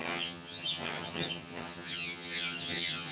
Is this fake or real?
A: fake